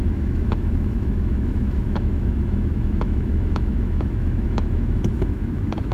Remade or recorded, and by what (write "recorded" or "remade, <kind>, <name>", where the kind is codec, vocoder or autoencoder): remade, autoencoder, DAC-VAE